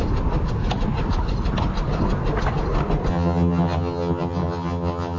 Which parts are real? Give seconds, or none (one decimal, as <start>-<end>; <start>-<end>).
0.0-3.1